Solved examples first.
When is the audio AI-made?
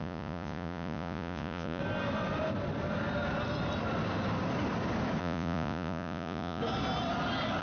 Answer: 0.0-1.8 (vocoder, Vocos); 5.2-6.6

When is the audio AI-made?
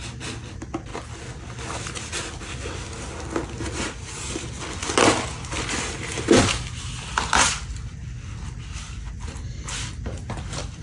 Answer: none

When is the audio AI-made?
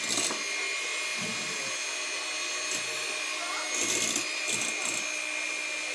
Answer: none